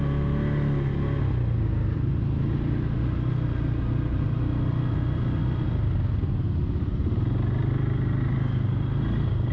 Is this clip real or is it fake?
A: real